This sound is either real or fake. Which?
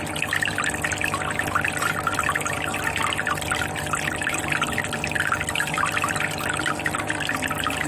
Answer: real